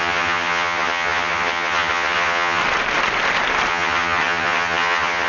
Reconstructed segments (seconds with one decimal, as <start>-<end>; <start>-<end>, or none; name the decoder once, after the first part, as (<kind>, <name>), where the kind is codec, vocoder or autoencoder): 0.0-2.6 (vocoder, HiFi-GAN); 3.7-5.3